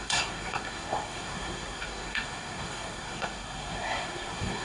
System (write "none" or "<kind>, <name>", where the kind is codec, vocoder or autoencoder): codec, SNAC